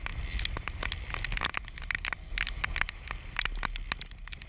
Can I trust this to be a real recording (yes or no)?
yes